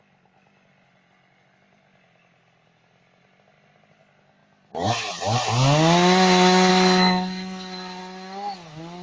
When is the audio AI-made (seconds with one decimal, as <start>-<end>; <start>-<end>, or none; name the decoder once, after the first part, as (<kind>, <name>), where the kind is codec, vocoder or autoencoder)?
6.7-8.0 (codec, SNAC)